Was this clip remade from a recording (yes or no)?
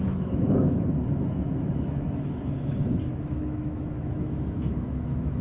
yes